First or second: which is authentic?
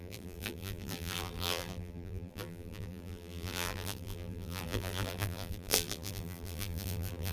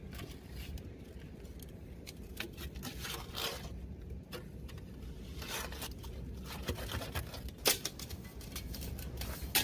second